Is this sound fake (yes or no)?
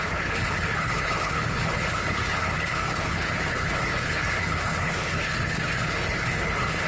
yes